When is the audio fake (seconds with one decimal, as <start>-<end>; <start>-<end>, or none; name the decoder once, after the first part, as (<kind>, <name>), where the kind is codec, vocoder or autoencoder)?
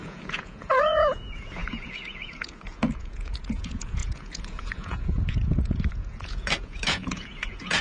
0.0-7.8 (vocoder, Vocos)